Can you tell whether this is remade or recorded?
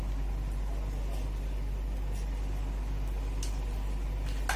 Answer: recorded